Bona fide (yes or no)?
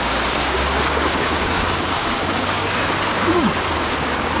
no